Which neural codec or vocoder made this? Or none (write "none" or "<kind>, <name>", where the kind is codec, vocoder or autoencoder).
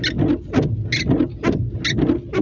none